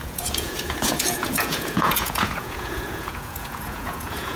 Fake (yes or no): yes